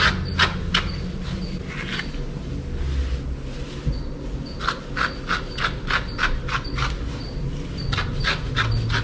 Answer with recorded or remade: recorded